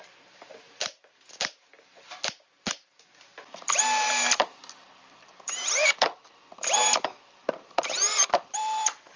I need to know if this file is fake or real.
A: fake